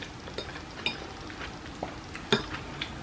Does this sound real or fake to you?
real